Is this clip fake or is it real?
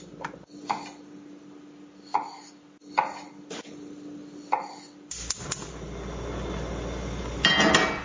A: real